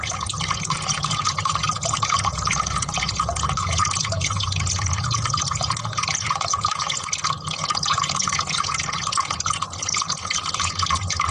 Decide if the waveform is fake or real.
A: fake